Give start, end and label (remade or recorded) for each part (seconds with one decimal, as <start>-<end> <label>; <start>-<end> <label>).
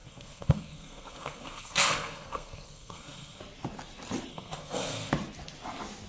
0.0-3.4 remade; 3.4-4.3 recorded; 4.3-5.1 remade; 5.1-6.1 recorded